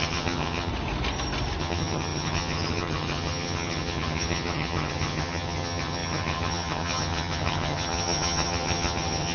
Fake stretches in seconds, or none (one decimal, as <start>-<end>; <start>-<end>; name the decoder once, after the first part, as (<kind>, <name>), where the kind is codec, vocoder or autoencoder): 0.0-0.7 (vocoder, HiFi-GAN); 1.6-9.3